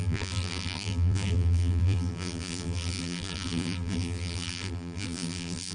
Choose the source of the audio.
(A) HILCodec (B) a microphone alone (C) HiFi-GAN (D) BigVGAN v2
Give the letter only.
D